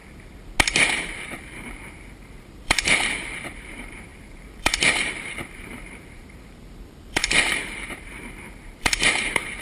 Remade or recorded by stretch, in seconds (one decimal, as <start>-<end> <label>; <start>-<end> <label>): 0.0-0.9 recorded; 0.9-9.6 remade